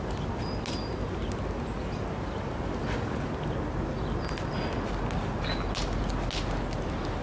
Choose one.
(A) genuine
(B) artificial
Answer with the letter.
A